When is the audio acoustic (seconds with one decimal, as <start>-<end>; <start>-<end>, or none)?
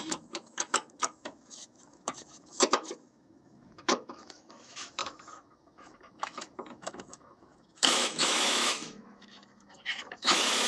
none